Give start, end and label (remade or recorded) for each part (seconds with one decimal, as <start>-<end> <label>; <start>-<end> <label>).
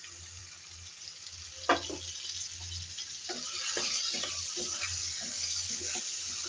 0.0-5.0 recorded; 5.0-6.0 remade; 6.0-6.5 recorded